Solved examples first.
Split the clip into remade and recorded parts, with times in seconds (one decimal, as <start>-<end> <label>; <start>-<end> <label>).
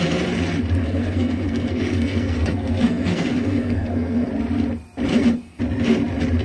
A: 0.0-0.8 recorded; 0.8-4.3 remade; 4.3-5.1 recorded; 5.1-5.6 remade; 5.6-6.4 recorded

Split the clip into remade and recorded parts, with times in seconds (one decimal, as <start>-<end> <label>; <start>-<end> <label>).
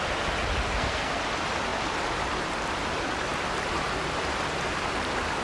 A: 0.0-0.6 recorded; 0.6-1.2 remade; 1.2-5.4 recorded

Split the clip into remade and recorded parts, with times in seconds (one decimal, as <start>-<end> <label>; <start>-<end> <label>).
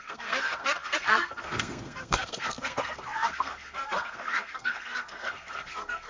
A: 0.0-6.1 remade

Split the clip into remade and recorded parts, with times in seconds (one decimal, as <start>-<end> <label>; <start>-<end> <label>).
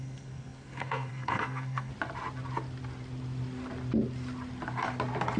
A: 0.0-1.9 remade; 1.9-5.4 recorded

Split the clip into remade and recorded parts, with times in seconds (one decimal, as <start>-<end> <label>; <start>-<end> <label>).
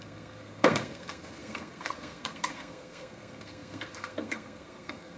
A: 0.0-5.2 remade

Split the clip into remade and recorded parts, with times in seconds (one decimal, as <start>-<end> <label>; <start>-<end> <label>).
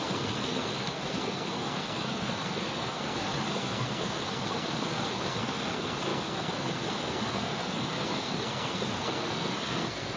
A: 0.0-10.2 remade